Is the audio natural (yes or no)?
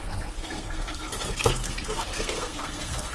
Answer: no